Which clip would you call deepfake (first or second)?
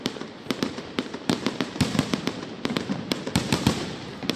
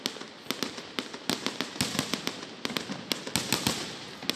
first